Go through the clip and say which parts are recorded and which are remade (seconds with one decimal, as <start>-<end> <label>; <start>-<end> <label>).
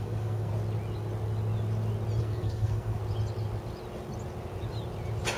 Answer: 0.0-0.5 remade; 0.5-2.2 recorded; 2.2-3.0 remade; 3.0-5.4 recorded